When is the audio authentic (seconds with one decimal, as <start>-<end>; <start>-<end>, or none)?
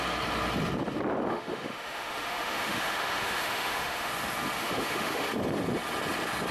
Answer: 0.0-1.3; 4.1-4.6; 5.3-6.5